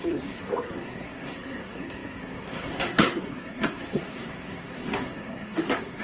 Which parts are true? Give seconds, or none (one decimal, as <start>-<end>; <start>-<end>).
none